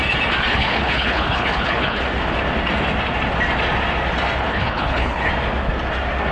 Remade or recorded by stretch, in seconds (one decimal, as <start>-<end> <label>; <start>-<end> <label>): 0.0-0.5 recorded; 0.5-2.0 remade; 2.0-4.4 recorded; 4.4-5.3 remade; 5.3-6.3 recorded